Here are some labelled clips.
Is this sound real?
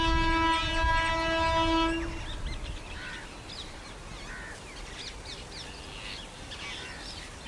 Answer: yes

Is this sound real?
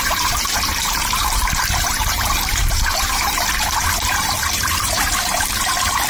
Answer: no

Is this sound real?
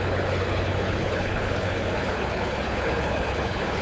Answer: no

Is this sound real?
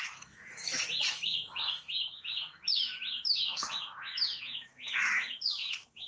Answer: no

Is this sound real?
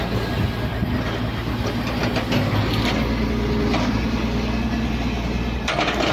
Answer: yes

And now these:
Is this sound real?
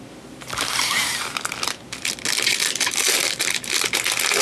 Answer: yes